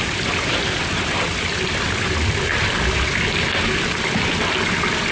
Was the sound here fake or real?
real